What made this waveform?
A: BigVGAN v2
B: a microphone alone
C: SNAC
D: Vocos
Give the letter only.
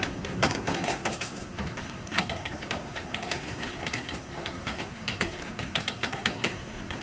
C